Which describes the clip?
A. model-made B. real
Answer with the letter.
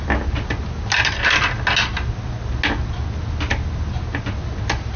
B